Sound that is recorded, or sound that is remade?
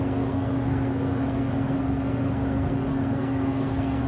remade